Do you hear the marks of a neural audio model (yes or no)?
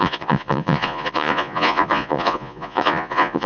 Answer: yes